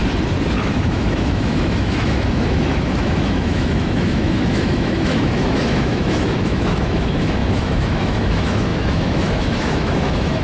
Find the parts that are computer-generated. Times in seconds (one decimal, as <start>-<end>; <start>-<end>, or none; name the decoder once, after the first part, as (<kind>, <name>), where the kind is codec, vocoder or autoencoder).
0.6-10.4 (autoencoder, DAC-VAE)